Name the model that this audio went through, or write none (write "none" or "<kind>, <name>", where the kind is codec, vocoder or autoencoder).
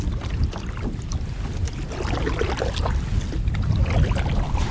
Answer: none